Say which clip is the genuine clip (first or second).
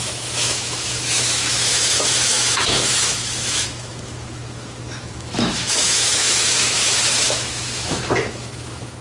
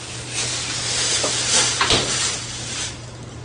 second